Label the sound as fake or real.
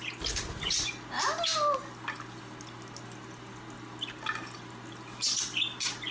real